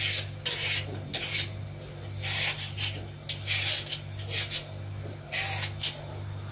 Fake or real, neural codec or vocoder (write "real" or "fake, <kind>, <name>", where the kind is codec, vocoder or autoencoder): real